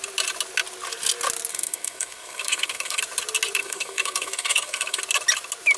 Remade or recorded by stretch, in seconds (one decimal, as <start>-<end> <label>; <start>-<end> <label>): 0.0-1.5 recorded; 1.5-3.0 remade; 3.0-3.6 recorded; 3.6-5.0 remade; 5.0-5.8 recorded